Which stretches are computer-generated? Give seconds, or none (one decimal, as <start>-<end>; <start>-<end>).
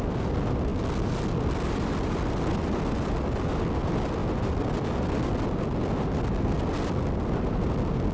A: none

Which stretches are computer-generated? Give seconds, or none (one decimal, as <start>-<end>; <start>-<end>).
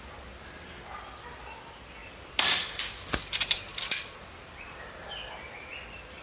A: 2.0-5.7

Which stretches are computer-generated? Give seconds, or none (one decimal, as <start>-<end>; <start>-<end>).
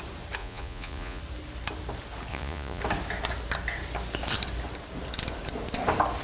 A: 0.4-1.2; 2.3-2.8